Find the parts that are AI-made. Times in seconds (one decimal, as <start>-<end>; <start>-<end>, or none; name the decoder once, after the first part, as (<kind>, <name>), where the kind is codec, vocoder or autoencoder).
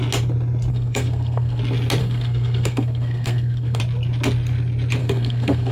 0.7-1.6 (codec, SNAC); 2.0-3.8; 5.0-5.7